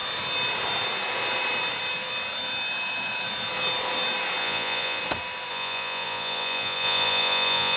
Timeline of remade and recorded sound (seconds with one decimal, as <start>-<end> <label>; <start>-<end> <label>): 0.0-4.4 recorded; 4.4-5.0 remade; 5.0-5.5 recorded; 5.5-7.8 remade